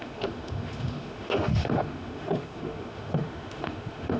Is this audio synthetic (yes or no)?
yes